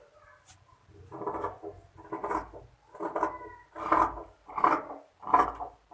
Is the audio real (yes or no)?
yes